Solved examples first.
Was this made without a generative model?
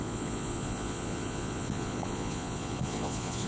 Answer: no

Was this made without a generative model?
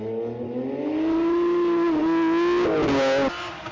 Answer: yes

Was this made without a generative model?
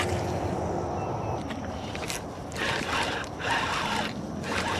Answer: yes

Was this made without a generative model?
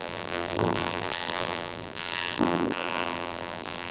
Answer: no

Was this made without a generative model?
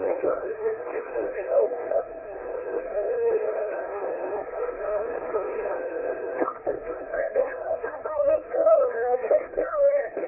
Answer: no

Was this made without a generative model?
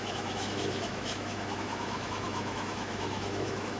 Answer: no